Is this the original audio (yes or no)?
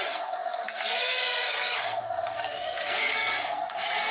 no